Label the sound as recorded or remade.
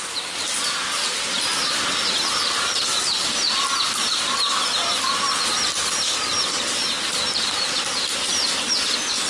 recorded